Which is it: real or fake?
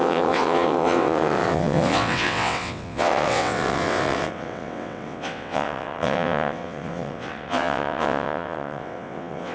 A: fake